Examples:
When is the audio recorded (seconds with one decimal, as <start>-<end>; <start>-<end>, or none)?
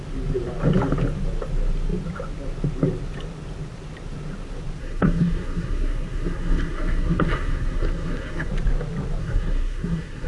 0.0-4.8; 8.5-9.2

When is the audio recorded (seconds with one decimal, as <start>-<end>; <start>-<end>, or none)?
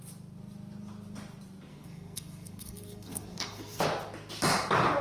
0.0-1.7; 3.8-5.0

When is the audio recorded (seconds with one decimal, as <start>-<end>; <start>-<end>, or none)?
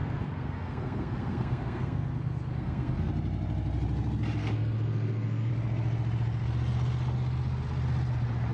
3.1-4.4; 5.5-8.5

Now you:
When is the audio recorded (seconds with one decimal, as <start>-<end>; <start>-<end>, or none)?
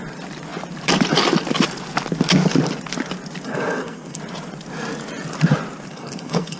0.0-3.5; 4.2-5.9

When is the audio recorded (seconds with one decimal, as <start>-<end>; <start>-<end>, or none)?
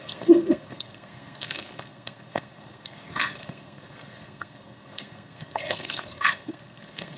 none